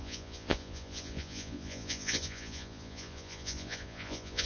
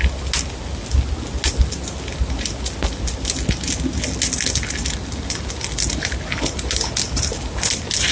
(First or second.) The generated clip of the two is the first